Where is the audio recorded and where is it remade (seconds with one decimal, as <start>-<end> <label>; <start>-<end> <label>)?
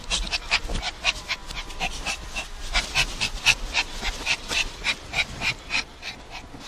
0.0-6.7 recorded